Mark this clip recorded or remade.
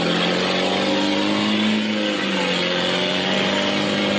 recorded